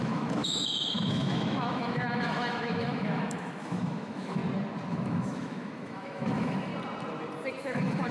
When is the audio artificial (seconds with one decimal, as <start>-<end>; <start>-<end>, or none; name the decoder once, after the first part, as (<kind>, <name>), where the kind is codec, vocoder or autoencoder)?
0.0-4.4 (autoencoder, DAC-VAE); 4.9-6.7; 7.6-8.1